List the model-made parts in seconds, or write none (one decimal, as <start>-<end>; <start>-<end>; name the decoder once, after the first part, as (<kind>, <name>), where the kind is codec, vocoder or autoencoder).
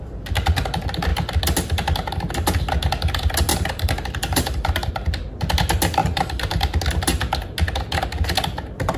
3.5-4.9 (vocoder, BigVGAN v2); 6.0-6.6